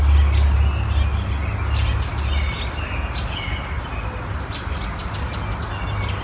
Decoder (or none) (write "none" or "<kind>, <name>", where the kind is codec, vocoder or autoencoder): none